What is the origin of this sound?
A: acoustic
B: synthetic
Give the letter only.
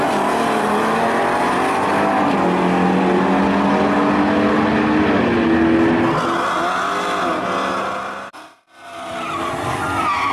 A